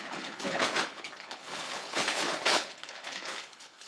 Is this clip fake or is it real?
fake